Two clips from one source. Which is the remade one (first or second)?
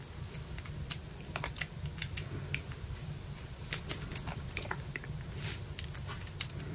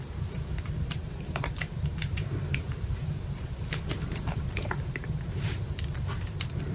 second